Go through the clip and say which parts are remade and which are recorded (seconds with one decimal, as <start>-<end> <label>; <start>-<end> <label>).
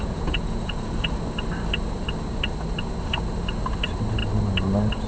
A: 0.0-1.1 remade; 1.1-5.1 recorded